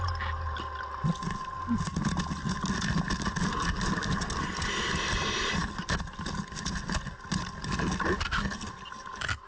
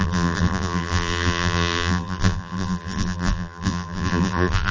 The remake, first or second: second